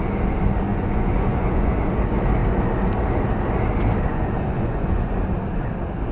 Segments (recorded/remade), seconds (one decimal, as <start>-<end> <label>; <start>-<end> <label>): 0.0-0.7 recorded; 0.7-1.7 remade; 1.7-4.1 recorded; 4.1-5.1 remade; 5.1-6.1 recorded